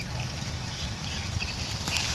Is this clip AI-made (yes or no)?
no